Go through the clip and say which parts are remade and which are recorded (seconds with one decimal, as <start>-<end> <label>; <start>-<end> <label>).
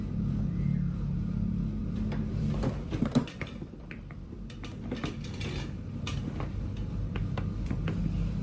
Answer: 0.0-1.8 recorded; 1.8-4.3 remade; 4.3-8.4 recorded